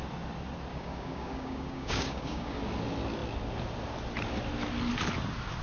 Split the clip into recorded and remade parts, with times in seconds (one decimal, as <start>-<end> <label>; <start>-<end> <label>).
0.0-0.7 recorded; 0.7-2.6 remade; 2.6-5.6 recorded